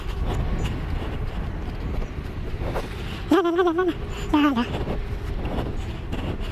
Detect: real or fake real